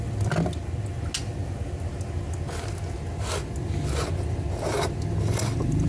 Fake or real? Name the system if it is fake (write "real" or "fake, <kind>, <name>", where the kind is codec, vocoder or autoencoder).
real